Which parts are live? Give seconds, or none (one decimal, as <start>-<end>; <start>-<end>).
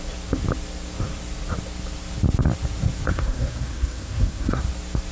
0.0-3.1; 4.6-5.1